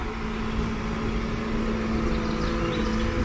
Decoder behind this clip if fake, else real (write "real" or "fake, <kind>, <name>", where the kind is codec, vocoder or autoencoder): real